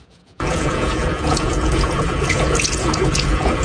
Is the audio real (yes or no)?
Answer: no